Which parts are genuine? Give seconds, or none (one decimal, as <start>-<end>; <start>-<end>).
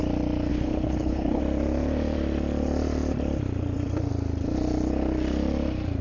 0.0-0.5; 1.4-6.0